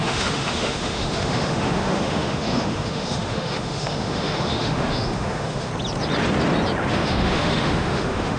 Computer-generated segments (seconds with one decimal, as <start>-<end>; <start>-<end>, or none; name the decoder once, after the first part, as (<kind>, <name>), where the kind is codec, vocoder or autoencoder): 0.0-5.7 (autoencoder, DAC-VAE); 6.9-8.4